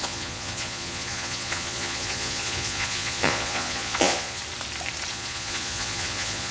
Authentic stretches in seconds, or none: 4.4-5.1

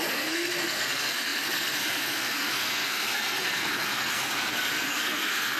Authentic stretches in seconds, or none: none

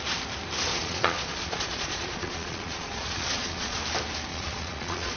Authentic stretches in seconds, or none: 0.0-0.7; 3.8-4.3

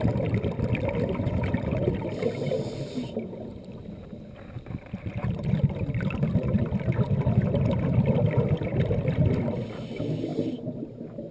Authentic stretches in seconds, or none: 0.0-11.3

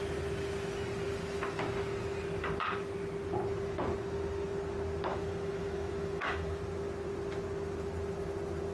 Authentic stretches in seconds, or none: 0.0-5.1; 6.6-8.7

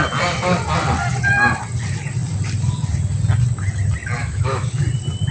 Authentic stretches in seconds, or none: 0.0-4.2; 4.8-5.3

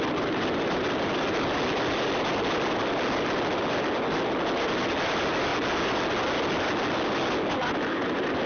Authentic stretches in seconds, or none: 0.0-8.5

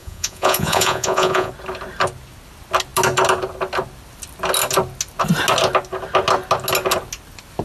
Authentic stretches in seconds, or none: 1.5-7.6